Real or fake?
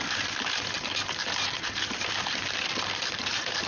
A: fake